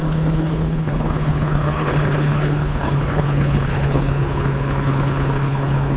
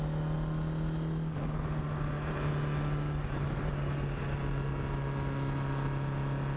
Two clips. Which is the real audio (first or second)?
second